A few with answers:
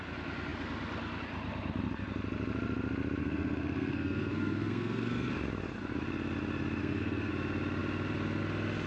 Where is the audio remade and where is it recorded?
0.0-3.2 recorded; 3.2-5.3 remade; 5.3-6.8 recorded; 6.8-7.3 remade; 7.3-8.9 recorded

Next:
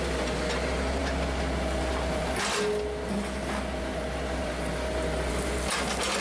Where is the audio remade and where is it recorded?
0.0-6.2 recorded

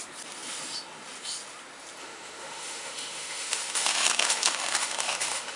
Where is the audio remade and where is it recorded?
0.0-2.0 recorded; 2.0-5.6 remade